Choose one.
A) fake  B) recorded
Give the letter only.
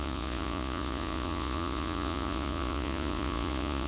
A